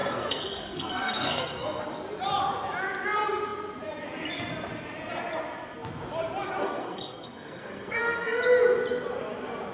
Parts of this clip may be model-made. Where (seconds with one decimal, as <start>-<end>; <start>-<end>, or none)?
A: 0.0-1.8; 6.6-8.4